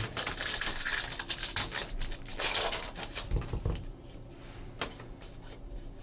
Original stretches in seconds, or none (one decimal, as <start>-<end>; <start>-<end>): 0.0-6.0